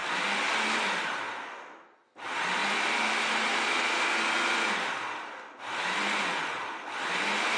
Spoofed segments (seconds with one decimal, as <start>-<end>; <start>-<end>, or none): none